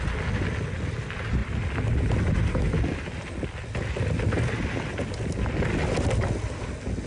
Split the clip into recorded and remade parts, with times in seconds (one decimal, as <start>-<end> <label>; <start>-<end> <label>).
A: 0.0-7.1 recorded